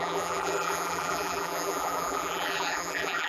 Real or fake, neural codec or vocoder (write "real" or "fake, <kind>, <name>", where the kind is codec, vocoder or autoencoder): fake, vocoder, BigVGAN v2